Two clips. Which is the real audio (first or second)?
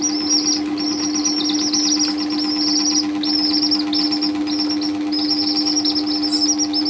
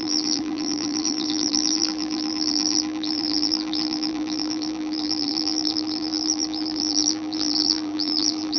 first